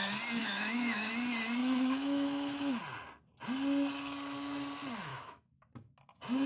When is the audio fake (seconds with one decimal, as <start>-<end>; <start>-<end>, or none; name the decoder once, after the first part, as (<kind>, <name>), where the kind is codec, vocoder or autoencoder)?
0.4-1.1 (autoencoder, DAC-VAE); 1.6-2.8; 5.1-5.7